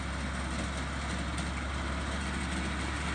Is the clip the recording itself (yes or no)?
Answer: yes